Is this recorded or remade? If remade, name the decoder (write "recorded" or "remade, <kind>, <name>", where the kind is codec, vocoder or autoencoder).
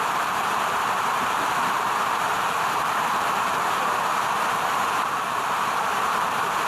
remade, vocoder, BigVGAN v2